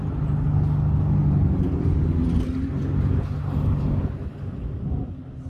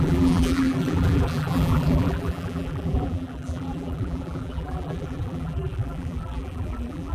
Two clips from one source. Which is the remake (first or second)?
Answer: second